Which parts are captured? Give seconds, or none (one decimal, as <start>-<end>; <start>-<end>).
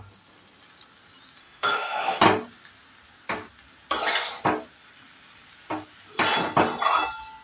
0.0-1.4; 2.2-7.4